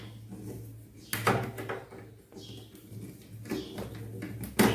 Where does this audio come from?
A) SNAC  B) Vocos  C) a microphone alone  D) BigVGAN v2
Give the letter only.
C